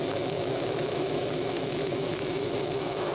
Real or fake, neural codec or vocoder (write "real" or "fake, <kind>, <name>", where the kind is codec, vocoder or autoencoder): fake, autoencoder, DAC-VAE